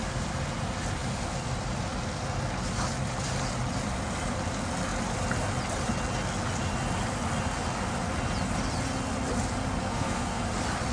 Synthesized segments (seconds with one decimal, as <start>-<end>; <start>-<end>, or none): 9.8-10.4